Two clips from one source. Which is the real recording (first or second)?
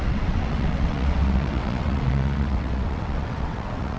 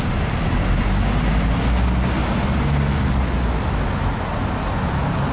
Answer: second